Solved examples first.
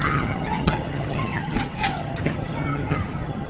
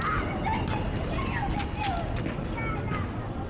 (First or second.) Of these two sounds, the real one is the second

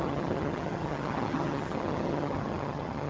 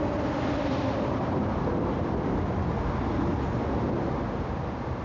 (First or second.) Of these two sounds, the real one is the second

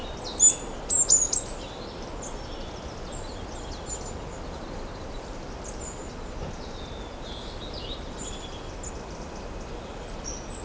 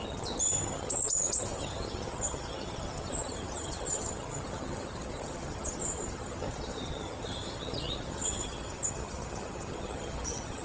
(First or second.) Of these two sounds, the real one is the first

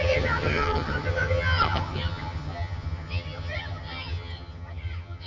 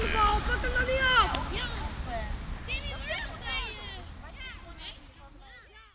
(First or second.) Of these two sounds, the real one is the second